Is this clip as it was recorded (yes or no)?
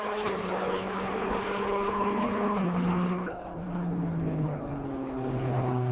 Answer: no